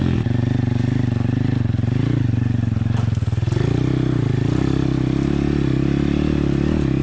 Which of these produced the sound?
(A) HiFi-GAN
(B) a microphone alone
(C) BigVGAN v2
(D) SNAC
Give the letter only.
B